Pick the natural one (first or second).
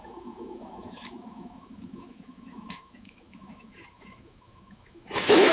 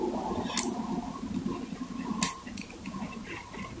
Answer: second